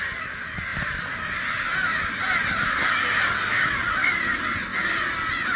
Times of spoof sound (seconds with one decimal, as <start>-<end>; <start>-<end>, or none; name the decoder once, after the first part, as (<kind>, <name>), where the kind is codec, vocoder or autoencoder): none